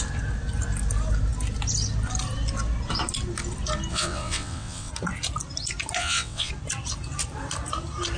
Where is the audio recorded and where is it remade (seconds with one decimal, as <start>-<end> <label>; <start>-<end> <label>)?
0.0-3.9 recorded; 3.9-4.9 remade; 4.9-6.0 recorded; 6.0-6.5 remade; 6.5-8.2 recorded

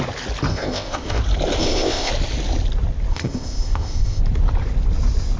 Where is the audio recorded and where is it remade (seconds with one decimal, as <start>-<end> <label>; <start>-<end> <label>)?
0.0-0.5 recorded; 0.5-1.2 remade; 1.2-1.6 recorded; 1.6-2.1 remade; 2.1-3.1 recorded; 3.1-4.2 remade; 4.2-5.4 recorded

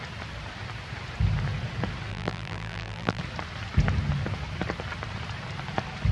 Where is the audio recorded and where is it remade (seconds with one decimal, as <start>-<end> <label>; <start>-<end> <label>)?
0.0-2.1 recorded; 2.1-3.2 remade; 3.2-6.1 recorded

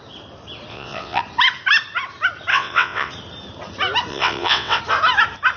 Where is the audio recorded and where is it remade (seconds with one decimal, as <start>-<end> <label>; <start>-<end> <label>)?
0.0-0.7 recorded; 0.7-1.2 remade; 1.2-2.5 recorded; 2.5-3.1 remade; 3.1-4.1 recorded; 4.1-4.8 remade; 4.8-5.6 recorded

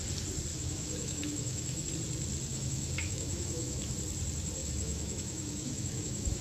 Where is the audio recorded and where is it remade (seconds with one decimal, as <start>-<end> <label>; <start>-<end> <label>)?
0.0-0.5 recorded; 0.5-1.9 remade; 1.9-2.5 recorded; 2.5-3.9 remade; 3.9-4.6 recorded; 4.6-6.4 remade